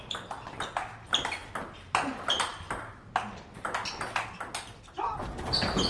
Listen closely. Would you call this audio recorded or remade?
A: recorded